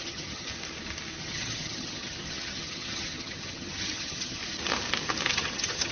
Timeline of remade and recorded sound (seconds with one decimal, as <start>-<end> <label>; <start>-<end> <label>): 0.0-0.5 remade; 0.5-1.2 recorded; 1.2-4.4 remade; 4.4-5.3 recorded; 5.3-5.9 remade